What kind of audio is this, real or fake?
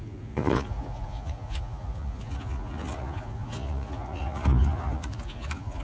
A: fake